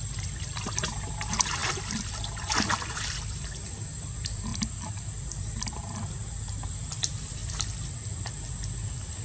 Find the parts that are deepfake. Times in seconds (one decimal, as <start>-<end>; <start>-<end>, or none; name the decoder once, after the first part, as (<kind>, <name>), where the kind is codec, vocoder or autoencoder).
0.0-7.4 (vocoder, BigVGAN v2); 8.5-9.2